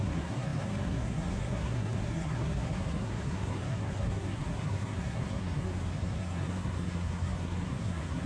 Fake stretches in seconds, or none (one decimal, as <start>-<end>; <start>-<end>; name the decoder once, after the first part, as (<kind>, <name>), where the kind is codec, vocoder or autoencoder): 0.0-8.3 (codec, SNAC)

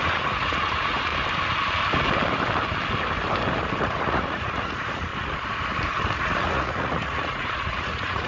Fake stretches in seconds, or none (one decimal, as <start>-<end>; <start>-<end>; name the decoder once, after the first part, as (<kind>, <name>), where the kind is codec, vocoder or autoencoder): 0.0-1.1 (vocoder, Vocos); 3.8-5.1; 6.2-8.3

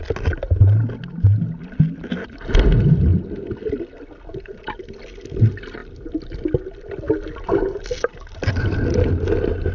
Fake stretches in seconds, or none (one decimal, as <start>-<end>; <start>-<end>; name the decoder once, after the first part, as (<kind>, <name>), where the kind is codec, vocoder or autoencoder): none

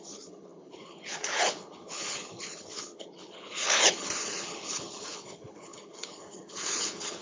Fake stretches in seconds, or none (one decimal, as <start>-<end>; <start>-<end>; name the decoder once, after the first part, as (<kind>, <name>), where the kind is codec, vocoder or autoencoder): 0.0-7.2 (codec, HILCodec)

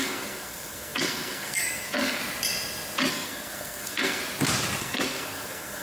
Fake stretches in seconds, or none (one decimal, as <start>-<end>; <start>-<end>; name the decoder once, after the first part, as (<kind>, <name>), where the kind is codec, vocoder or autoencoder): 0.0-2.2 (codec, SNAC); 3.1-4.2; 4.8-5.8